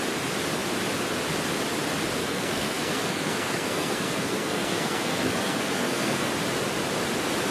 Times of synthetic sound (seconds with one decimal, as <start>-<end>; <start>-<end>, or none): 2.2-6.3